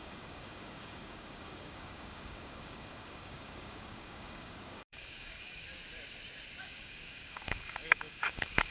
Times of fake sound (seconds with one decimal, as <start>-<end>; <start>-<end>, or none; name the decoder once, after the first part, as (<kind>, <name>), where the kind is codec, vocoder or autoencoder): 0.0-5.7 (codec, DAC); 6.6-8.7